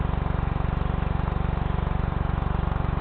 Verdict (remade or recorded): remade